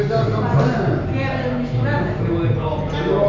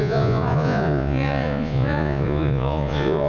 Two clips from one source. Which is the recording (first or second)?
first